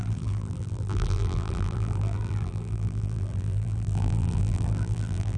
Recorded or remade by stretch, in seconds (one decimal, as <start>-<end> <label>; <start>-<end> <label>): 0.0-5.4 remade